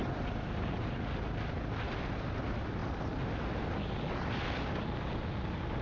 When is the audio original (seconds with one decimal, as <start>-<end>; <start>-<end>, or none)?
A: 0.0-5.8